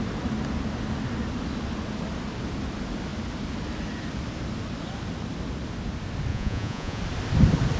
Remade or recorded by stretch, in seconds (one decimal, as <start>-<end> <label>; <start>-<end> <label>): 0.0-6.3 recorded; 6.3-7.0 remade; 7.0-7.8 recorded

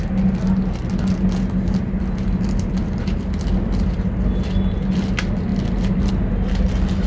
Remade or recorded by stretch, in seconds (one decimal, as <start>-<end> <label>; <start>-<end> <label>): 0.0-7.1 recorded

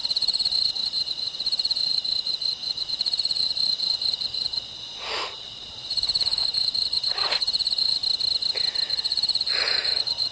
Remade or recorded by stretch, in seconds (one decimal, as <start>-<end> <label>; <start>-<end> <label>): 0.0-8.0 remade; 8.0-8.9 recorded; 8.9-10.3 remade

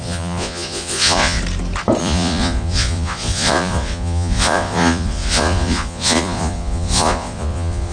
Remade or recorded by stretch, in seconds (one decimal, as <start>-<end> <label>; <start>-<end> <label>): 0.0-1.4 remade; 1.4-2.0 recorded; 2.0-7.9 remade